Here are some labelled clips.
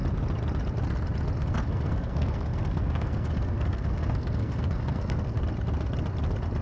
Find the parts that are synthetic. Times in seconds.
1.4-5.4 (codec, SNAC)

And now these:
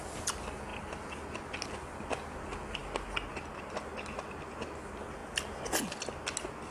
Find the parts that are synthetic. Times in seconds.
none

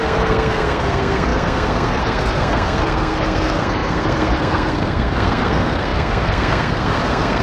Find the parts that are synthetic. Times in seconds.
0.0-7.4 (codec, SNAC)